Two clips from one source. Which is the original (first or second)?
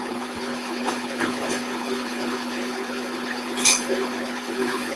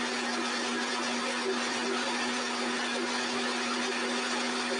second